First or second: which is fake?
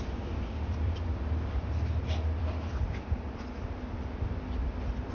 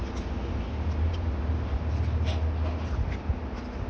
first